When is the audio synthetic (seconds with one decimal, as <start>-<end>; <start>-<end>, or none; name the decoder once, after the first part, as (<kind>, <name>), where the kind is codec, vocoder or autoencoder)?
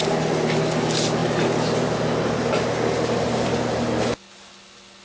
none